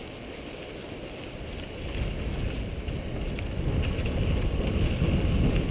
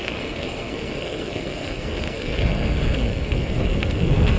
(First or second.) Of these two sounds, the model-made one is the second